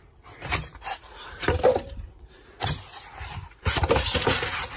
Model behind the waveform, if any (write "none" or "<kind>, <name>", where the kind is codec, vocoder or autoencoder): vocoder, BigVGAN v2